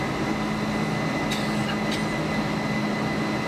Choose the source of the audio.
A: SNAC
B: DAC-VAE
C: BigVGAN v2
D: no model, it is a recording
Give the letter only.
D